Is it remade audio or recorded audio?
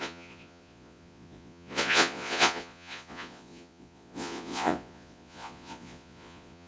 remade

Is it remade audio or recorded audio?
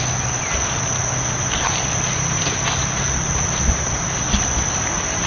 recorded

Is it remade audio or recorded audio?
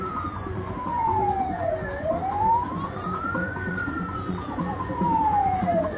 remade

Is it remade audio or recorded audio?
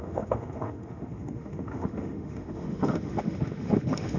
remade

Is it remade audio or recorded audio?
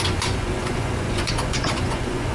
remade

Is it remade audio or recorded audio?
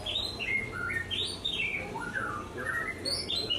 recorded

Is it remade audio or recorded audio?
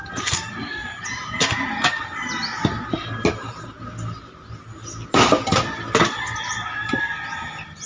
recorded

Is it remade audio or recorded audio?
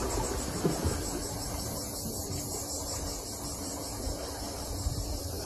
recorded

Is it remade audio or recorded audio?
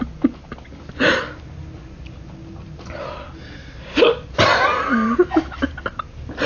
recorded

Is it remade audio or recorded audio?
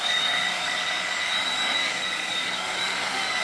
remade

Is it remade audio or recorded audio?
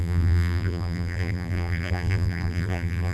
remade